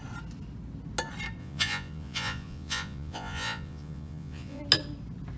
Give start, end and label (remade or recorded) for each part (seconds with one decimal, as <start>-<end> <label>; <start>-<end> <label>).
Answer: 0.0-1.4 recorded; 1.4-4.6 remade; 4.6-5.4 recorded